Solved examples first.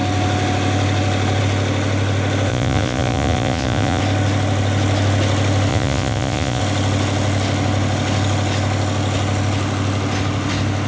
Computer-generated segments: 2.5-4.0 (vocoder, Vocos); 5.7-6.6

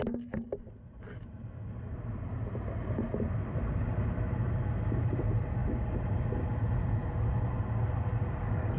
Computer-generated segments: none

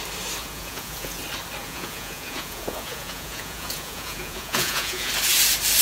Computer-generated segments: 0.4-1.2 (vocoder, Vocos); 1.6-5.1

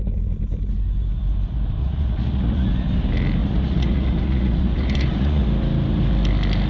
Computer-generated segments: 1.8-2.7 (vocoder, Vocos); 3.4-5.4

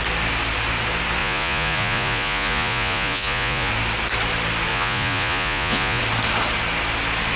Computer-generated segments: 1.2-3.7 (vocoder, Vocos); 4.7-6.0

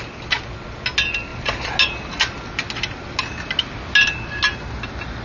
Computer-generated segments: none

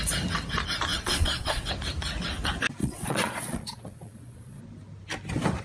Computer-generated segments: 0.9-1.7 (vocoder, Vocos); 2.8-4.6

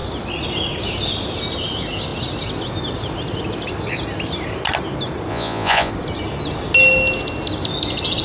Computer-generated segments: 5.3-5.9 (vocoder, Vocos)